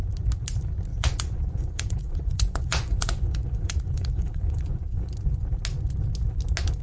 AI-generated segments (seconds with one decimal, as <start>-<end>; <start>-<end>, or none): 0.9-5.0